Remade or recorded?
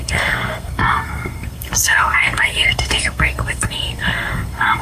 remade